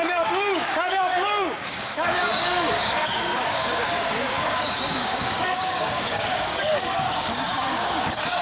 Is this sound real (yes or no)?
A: no